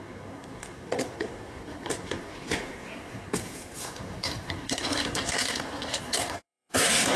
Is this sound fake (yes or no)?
yes